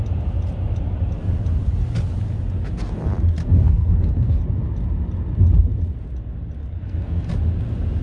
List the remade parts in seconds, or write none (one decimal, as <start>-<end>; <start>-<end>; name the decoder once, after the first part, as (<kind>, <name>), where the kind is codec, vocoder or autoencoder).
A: 3.4-4.4 (codec, SNAC); 6.6-7.3